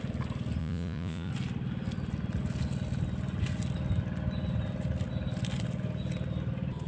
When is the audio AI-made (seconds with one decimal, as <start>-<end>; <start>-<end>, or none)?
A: 0.6-1.3